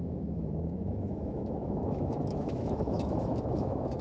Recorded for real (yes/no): no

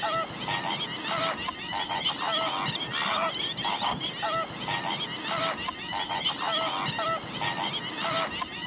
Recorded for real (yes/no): yes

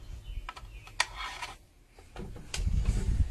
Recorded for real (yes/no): yes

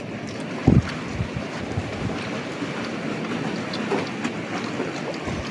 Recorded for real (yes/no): yes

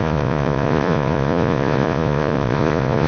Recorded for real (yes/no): no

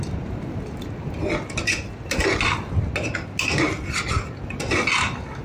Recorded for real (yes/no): yes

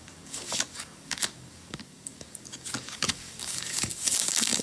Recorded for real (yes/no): no